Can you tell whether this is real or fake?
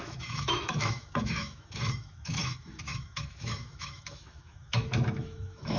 fake